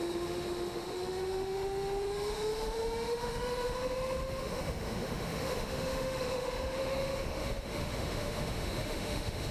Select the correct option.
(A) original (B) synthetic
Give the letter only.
B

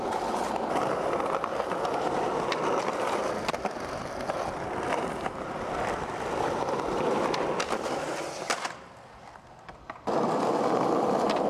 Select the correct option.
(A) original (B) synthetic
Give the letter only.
A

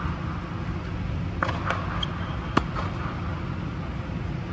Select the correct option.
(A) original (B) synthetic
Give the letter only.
A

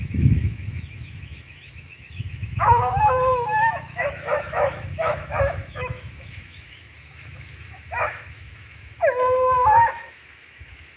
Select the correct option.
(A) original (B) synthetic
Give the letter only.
B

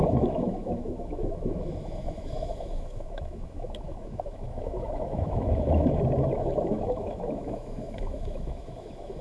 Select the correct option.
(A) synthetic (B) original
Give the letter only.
A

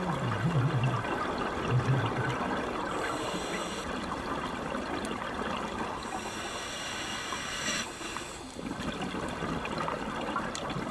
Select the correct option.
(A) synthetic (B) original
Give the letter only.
B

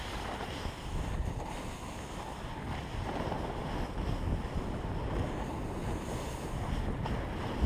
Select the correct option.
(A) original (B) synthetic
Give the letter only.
A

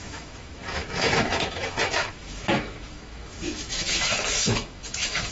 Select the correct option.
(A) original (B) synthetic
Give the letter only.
B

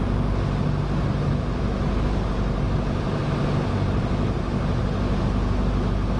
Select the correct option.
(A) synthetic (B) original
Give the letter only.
B